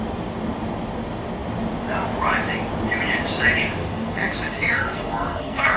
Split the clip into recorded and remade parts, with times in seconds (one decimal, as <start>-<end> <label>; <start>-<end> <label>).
0.0-3.8 recorded; 3.8-5.8 remade